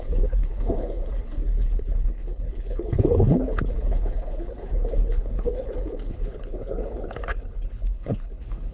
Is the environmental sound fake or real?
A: fake